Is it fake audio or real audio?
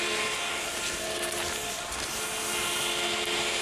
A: real